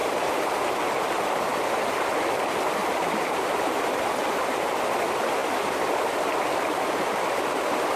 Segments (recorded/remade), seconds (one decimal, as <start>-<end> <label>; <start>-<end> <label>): 0.0-0.8 remade; 0.8-2.8 recorded; 2.8-4.0 remade; 4.0-8.0 recorded